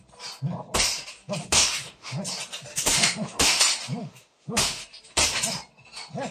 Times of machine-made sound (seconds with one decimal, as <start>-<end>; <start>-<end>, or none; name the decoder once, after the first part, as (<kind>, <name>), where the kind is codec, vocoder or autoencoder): 1.4-2.2 (autoencoder, DAC-VAE); 2.7-3.6; 4.0-4.8